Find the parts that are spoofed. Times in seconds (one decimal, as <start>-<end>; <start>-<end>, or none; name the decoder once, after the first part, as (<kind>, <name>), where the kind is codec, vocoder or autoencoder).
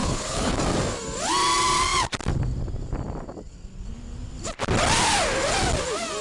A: 0.0-0.6 (codec, HILCodec)